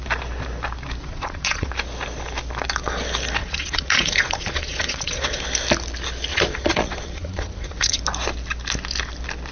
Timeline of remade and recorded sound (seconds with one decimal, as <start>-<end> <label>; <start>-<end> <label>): 0.0-1.0 recorded; 1.0-1.7 remade; 1.7-3.4 recorded; 3.4-5.4 remade; 5.4-6.3 recorded; 6.3-8.0 remade; 8.0-9.5 recorded